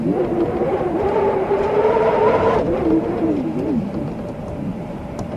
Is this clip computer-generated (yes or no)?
yes